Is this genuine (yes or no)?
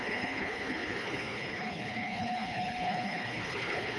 no